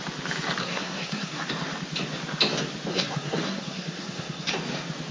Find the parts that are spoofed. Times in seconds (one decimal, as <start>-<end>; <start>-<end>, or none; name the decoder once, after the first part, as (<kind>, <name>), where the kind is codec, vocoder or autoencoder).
0.6-1.5 (codec, SNAC); 2.9-4.5